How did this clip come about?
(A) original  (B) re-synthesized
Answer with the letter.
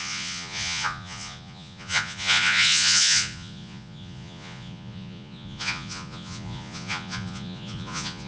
B